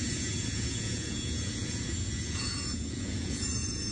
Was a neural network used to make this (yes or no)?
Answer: yes